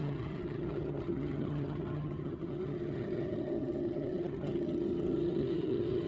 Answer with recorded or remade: remade